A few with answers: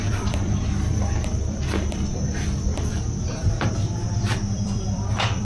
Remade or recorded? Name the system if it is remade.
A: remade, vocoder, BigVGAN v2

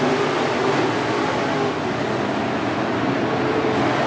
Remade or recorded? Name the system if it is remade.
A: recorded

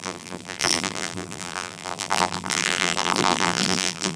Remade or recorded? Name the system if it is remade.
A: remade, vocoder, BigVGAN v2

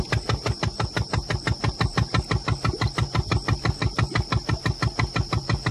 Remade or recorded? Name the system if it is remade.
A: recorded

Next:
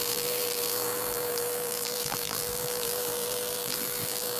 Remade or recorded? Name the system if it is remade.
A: remade, vocoder, BigVGAN v2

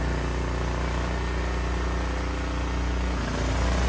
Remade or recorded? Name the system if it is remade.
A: recorded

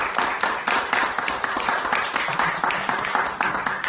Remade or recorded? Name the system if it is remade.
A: recorded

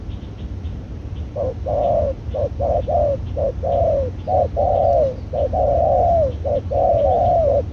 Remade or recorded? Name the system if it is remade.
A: recorded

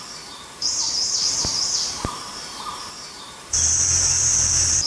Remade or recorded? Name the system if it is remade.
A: remade, vocoder, BigVGAN v2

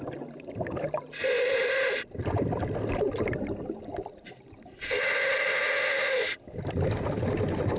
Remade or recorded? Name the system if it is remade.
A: recorded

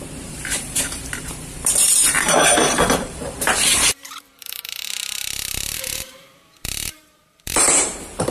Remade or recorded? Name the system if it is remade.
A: remade, vocoder, BigVGAN v2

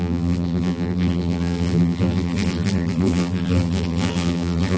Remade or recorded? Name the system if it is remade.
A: remade, vocoder, BigVGAN v2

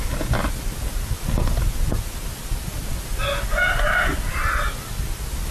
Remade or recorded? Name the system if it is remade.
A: recorded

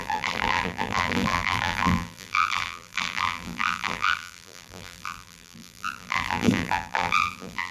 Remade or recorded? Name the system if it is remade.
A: remade, vocoder, BigVGAN v2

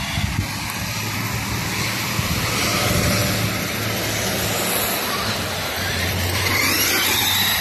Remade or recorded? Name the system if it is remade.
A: remade, vocoder, BigVGAN v2